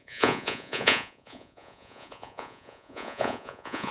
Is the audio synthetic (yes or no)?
yes